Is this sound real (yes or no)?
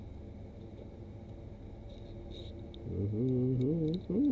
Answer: yes